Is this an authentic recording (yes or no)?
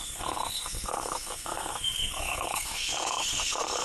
no